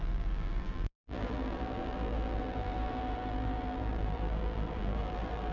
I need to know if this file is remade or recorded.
remade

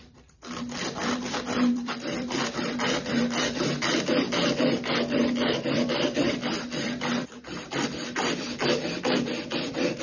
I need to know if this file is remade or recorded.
remade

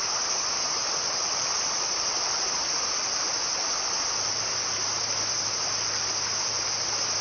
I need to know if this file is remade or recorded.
recorded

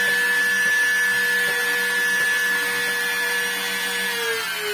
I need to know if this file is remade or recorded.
recorded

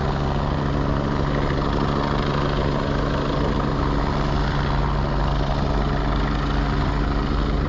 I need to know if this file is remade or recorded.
recorded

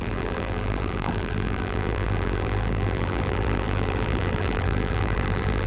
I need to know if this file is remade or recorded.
remade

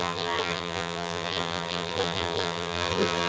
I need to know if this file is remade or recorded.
remade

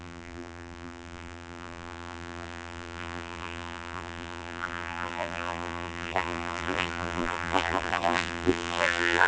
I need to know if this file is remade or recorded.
remade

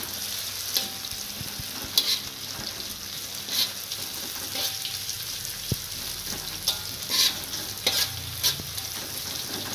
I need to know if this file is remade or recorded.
recorded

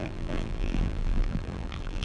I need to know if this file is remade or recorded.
remade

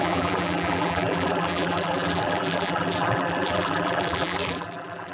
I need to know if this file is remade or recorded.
remade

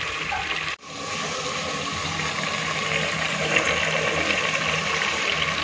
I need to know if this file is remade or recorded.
recorded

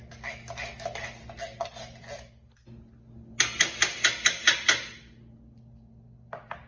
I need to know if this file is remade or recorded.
recorded